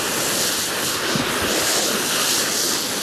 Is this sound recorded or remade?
recorded